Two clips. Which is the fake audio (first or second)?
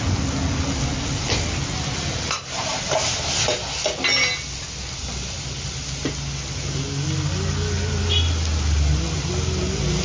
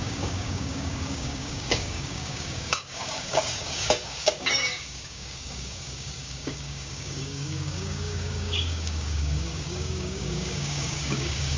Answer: second